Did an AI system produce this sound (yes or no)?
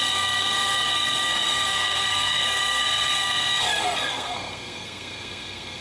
yes